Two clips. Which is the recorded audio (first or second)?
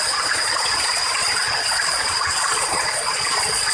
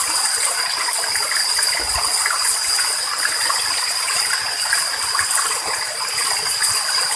second